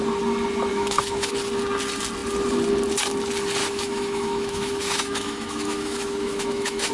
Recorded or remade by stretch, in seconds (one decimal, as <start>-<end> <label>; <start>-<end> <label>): 0.0-0.7 recorded; 0.7-1.3 remade; 1.3-3.6 recorded; 3.6-6.9 remade